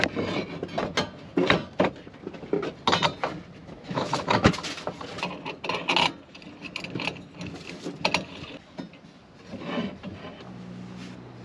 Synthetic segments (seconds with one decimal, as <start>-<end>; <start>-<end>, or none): 3.6-4.5